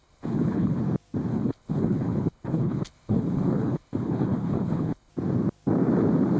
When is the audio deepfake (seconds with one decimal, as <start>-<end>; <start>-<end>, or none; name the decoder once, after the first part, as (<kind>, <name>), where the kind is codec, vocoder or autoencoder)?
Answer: 0.0-0.8 (codec, HILCodec); 1.3-5.1